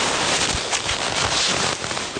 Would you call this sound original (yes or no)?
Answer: yes